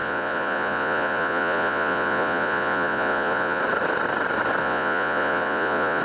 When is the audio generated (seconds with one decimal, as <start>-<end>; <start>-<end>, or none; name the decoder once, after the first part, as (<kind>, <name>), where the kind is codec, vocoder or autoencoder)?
0.0-3.6 (vocoder, Vocos); 4.6-6.0

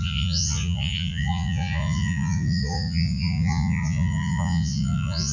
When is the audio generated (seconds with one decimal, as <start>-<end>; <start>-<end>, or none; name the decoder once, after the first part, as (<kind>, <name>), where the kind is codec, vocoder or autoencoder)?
0.0-5.3 (vocoder, Vocos)

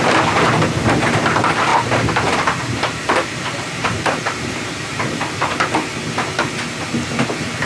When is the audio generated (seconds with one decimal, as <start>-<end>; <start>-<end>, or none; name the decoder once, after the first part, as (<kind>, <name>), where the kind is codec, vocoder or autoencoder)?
1.7-5.0 (vocoder, BigVGAN v2)

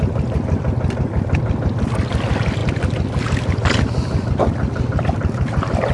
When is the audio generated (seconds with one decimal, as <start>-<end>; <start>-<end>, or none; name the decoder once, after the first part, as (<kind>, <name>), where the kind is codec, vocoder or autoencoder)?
none

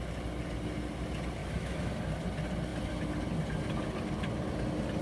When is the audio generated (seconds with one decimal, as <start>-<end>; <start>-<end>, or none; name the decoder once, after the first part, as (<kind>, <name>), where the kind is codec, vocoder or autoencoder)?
1.4-1.9 (autoencoder, DAC-VAE)

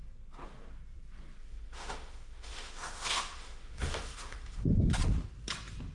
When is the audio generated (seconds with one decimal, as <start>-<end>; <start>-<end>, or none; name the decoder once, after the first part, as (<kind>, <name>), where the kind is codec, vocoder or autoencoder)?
1.4-4.9 (autoencoder, DAC-VAE)